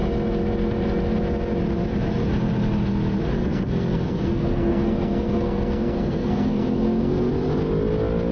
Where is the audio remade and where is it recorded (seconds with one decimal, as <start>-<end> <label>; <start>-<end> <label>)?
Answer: 0.0-3.4 recorded; 3.4-7.3 remade; 7.3-8.3 recorded